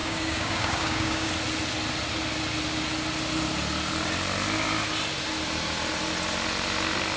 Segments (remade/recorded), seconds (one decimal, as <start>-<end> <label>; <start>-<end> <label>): 0.0-1.3 remade; 1.3-7.2 recorded